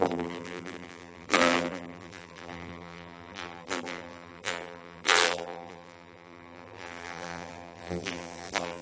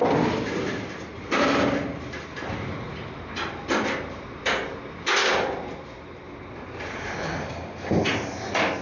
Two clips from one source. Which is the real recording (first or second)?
second